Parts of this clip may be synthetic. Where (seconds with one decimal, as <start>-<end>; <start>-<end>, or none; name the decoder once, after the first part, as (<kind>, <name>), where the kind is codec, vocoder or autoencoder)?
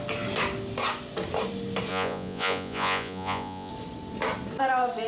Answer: 1.9-3.7 (vocoder, Vocos)